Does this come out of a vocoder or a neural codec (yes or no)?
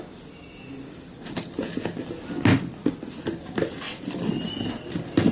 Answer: no